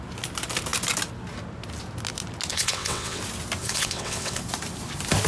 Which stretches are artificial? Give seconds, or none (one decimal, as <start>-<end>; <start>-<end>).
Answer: 2.5-3.2; 3.6-4.4